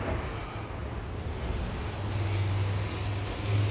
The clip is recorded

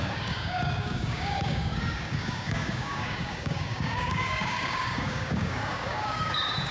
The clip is remade